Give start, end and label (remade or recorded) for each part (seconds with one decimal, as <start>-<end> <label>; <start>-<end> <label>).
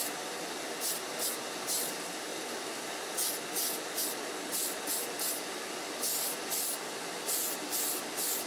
0.0-8.5 recorded